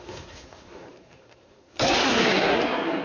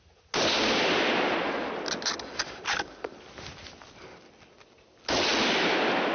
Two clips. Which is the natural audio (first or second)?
second